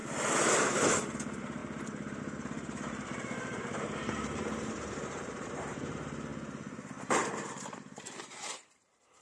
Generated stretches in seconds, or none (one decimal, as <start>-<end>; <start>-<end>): 0.9-1.6; 2.2-6.3; 7.5-9.2